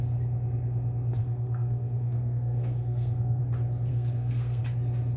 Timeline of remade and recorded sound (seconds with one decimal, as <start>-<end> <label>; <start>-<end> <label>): 0.0-1.2 recorded; 1.2-3.4 remade; 3.4-3.9 recorded; 3.9-4.6 remade; 4.6-5.2 recorded